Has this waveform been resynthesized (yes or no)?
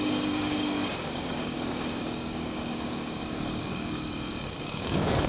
yes